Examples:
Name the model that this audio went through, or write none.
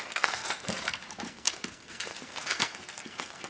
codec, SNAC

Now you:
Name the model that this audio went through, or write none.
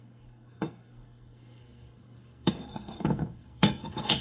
codec, SNAC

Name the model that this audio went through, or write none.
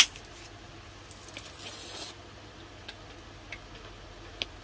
none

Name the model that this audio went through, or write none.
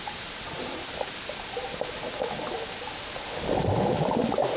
none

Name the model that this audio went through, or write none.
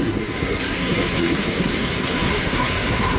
codec, SNAC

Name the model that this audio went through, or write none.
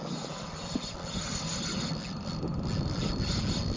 none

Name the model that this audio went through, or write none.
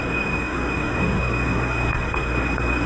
codec, SNAC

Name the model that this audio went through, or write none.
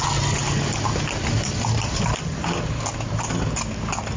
none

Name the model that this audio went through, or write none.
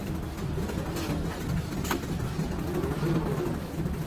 none